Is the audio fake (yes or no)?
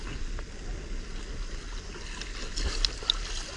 no